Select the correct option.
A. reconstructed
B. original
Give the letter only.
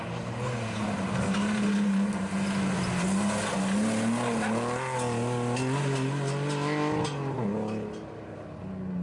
B